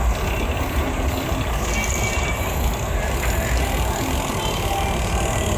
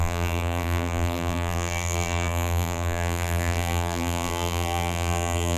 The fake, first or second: second